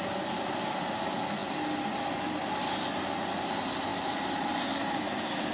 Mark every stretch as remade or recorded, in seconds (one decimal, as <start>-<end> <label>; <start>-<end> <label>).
0.0-5.5 recorded